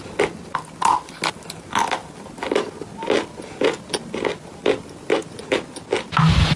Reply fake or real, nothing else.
real